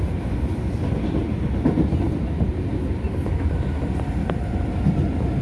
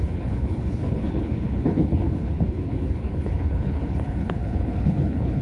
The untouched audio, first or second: first